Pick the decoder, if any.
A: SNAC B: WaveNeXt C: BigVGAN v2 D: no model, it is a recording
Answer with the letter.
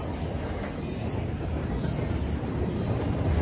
D